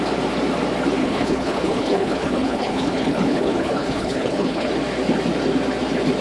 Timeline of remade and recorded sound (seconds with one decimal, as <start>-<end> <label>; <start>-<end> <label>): 0.0-1.0 recorded; 1.0-4.7 remade; 4.7-6.2 recorded